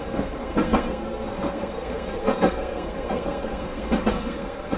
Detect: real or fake fake